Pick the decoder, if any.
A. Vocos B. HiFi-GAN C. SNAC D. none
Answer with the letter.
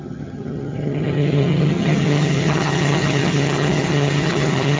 B